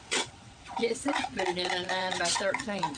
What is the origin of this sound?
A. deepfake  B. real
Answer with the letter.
A